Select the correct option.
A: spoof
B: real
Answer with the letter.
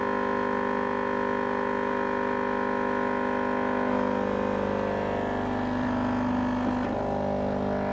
B